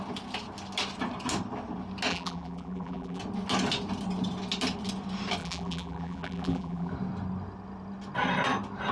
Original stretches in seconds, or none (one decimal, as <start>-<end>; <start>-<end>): 0.0-2.1; 3.2-5.4; 6.9-8.9